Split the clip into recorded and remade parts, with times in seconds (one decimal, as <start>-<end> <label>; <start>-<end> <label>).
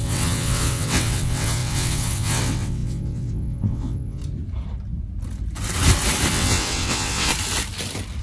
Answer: 0.0-4.2 remade; 4.2-6.3 recorded; 6.3-7.3 remade; 7.3-8.2 recorded